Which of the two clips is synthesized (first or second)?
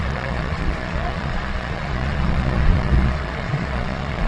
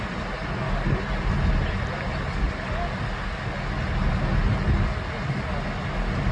first